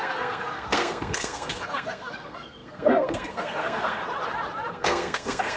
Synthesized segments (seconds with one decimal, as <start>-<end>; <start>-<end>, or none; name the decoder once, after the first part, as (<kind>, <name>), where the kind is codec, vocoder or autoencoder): 0.0-4.0 (codec, SNAC); 4.7-5.6